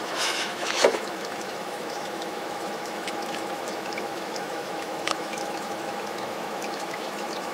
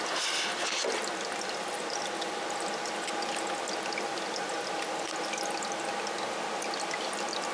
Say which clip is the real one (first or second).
second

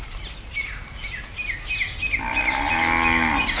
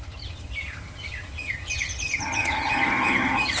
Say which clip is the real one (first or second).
first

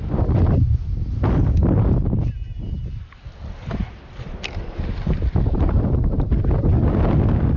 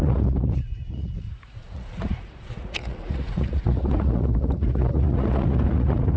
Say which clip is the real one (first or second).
first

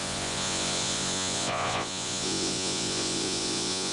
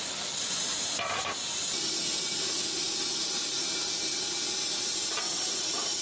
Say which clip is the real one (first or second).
second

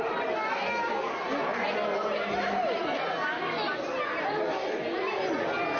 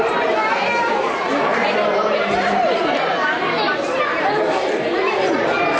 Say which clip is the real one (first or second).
first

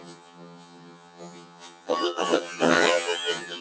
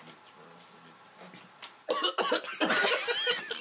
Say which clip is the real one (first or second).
second